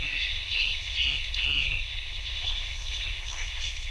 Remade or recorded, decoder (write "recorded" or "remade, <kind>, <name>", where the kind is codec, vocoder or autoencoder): remade, codec, SNAC